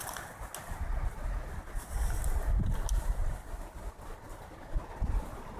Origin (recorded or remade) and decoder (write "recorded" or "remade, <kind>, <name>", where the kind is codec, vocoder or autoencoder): recorded